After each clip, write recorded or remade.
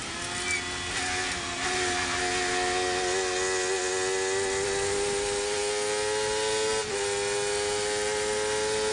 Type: recorded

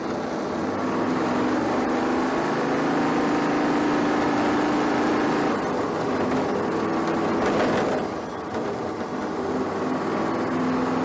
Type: recorded